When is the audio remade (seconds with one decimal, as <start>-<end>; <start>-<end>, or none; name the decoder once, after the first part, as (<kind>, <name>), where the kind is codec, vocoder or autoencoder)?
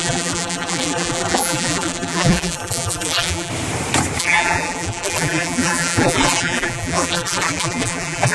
0.0-3.5 (vocoder, BigVGAN v2); 4.2-8.3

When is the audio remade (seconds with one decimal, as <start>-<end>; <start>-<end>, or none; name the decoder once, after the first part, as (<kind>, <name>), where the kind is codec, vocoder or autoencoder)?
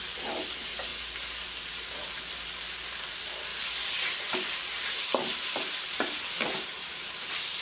0.0-0.9 (vocoder, BigVGAN v2); 3.1-3.5; 4.5-7.6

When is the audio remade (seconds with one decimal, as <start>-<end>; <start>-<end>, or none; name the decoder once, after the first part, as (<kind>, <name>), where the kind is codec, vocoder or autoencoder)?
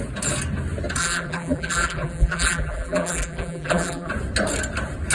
1.0-4.1 (vocoder, BigVGAN v2)